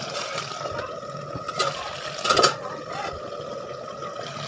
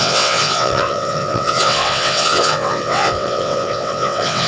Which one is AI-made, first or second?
second